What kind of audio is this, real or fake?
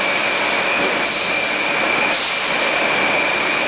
real